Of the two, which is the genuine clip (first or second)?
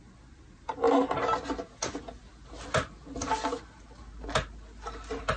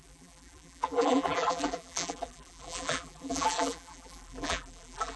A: first